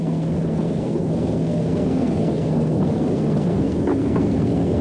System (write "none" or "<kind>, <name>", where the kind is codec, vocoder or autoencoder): codec, SNAC